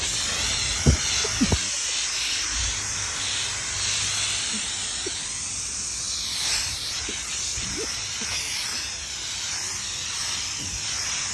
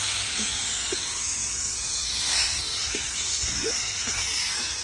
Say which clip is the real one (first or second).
first